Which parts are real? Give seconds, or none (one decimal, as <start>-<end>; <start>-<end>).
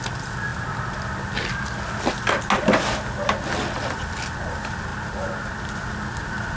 0.0-6.6